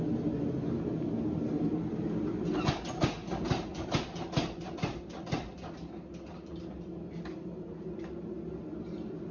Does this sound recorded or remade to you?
recorded